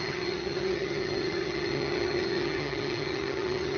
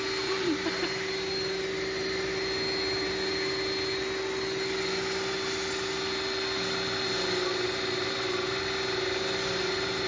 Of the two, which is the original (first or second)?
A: second